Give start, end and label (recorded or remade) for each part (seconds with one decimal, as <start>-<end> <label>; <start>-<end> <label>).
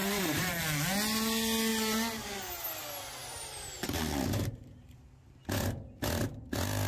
0.0-0.5 remade; 0.5-3.2 recorded; 3.2-5.0 remade; 5.0-6.9 recorded